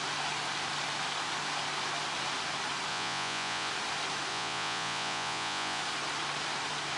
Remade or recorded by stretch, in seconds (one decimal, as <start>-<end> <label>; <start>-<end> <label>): 0.0-2.9 recorded; 2.9-3.7 remade; 3.7-4.3 recorded; 4.3-5.8 remade; 5.8-7.0 recorded